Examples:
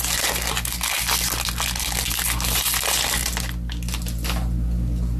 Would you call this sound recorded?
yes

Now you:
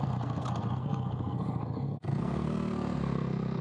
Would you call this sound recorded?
no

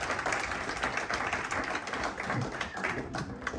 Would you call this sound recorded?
yes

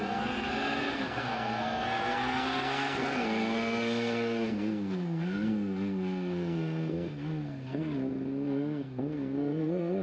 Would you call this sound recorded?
no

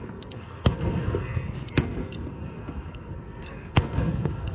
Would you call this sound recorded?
no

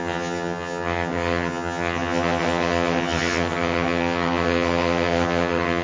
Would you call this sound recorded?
no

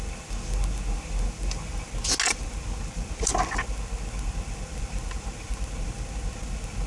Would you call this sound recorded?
yes